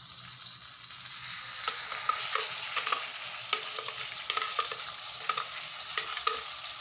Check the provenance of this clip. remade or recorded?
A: recorded